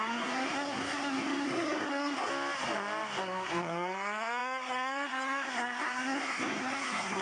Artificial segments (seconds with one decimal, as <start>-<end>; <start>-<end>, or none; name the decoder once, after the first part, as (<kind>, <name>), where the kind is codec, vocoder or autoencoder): 0.0-2.3 (codec, SNAC); 3.2-7.2